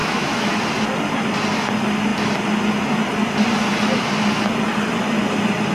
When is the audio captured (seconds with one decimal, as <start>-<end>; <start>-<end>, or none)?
0.5-5.7